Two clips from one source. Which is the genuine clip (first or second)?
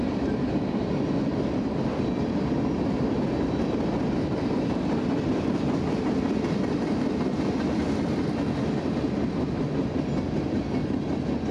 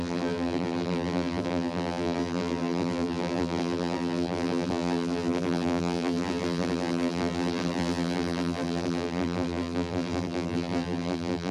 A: first